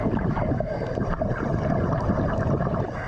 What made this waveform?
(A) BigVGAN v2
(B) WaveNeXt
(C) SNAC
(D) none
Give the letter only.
D